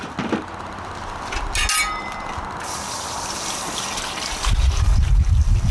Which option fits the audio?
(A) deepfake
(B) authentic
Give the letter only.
B